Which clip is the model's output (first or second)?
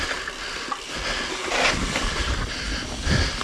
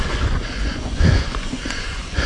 second